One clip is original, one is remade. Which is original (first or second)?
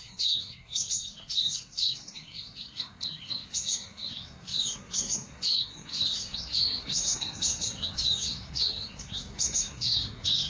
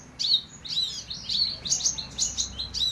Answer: second